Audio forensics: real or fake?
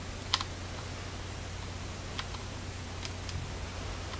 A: real